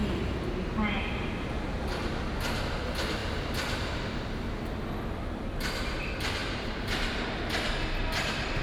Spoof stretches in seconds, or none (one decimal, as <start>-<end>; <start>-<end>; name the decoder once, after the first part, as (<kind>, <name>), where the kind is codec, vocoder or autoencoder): 0.0-0.5 (vocoder, BigVGAN v2); 6.4-7.3